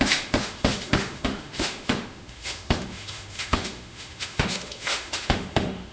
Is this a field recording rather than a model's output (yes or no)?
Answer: no